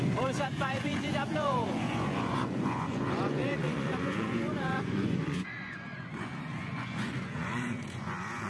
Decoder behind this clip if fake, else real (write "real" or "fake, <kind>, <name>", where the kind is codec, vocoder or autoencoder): fake, vocoder, Vocos